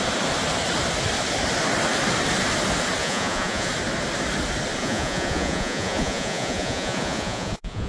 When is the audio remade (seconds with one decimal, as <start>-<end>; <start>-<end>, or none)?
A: 3.0-3.7; 4.8-7.9